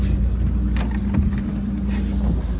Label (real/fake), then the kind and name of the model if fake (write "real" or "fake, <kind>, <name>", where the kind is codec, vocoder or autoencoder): real